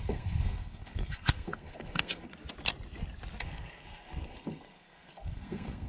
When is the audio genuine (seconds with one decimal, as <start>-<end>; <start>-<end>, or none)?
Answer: 2.3-3.4